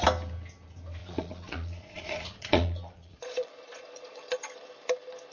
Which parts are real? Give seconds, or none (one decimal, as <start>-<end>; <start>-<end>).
0.0-1.0; 4.2-5.3